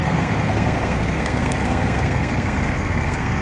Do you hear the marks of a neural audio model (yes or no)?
yes